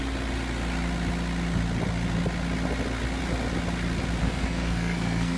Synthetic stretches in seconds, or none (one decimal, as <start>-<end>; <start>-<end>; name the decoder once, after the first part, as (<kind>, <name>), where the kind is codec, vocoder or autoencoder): 4.2-5.4 (codec, SNAC)